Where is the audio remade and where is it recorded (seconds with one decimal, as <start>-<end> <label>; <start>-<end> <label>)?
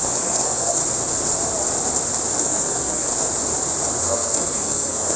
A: 0.0-0.8 remade; 0.8-2.4 recorded; 2.4-3.1 remade; 3.1-3.9 recorded; 3.9-5.2 remade